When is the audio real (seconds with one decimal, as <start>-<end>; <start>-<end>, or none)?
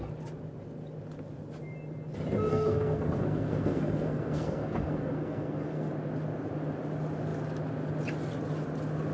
0.0-2.5; 5.9-9.1